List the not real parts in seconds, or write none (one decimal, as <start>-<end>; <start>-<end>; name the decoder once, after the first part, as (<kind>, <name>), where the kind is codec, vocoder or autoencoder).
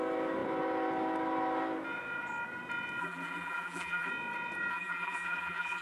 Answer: 3.0-4.1 (vocoder, BigVGAN v2); 4.7-5.8